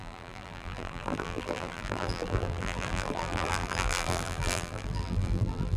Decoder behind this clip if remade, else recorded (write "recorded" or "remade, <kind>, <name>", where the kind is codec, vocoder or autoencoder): remade, vocoder, BigVGAN v2